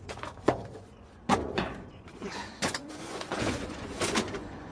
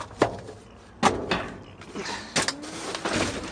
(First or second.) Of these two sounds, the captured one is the second